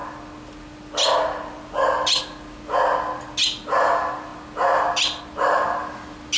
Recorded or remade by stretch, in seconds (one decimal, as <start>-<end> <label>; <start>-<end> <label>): 0.0-6.4 recorded